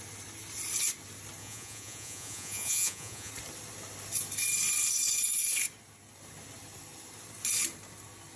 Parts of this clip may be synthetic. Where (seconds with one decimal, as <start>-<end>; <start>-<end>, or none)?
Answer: 1.4-3.3